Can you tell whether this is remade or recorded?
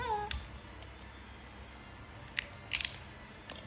recorded